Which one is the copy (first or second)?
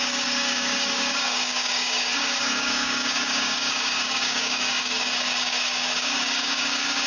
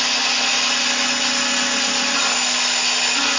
first